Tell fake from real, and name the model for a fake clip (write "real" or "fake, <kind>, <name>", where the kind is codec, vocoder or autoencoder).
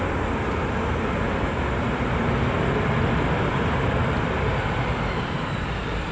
real